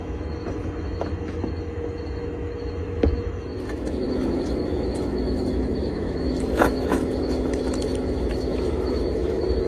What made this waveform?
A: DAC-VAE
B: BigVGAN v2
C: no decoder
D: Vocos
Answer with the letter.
A